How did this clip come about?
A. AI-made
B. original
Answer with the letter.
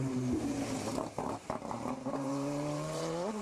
A